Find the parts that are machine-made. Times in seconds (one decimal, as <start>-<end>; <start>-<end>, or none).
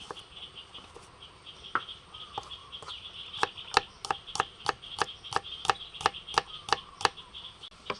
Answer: none